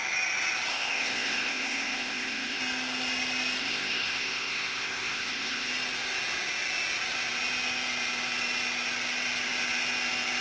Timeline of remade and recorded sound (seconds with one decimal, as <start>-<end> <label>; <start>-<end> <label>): 0.0-0.7 recorded; 0.7-2.6 remade; 2.6-3.6 recorded; 3.6-5.7 remade; 5.7-10.4 recorded